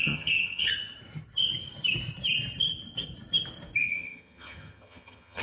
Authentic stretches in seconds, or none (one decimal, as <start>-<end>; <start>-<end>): 0.7-3.9